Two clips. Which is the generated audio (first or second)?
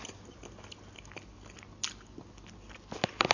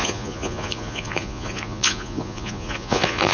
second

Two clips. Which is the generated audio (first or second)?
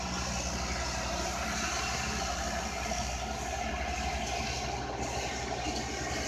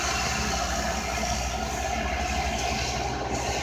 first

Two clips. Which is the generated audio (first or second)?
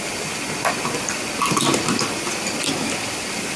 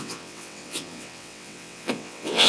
second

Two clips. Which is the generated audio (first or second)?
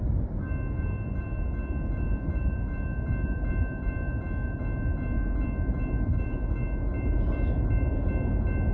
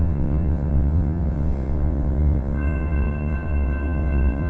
second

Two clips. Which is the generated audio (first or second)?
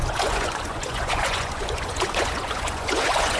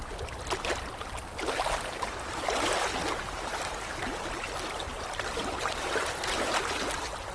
first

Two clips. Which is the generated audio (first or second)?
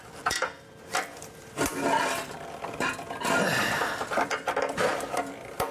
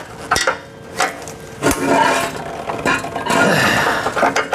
first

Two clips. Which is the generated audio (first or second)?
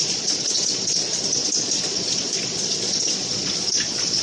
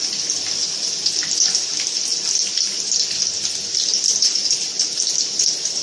first